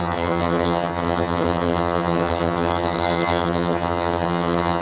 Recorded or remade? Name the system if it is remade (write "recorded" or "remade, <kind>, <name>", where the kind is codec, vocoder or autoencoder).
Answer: remade, vocoder, HiFi-GAN